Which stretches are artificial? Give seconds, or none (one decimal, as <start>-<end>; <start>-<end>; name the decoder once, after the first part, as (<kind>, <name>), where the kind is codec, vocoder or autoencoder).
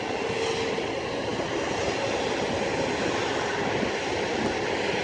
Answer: 1.3-4.3 (vocoder, BigVGAN v2)